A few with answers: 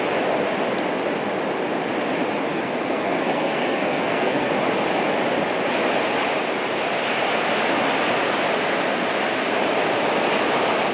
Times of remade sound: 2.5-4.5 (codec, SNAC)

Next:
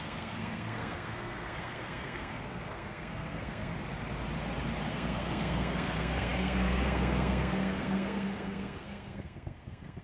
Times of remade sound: 0.0-3.7 (codec, SNAC); 4.9-10.0

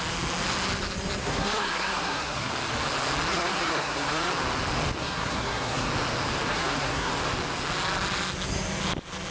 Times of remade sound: 1.2-2.5 (codec, SNAC); 3.3-4.3; 5.0-5.9; 6.5-7.1

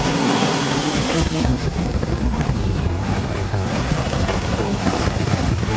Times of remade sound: 0.0-5.8 (codec, SNAC)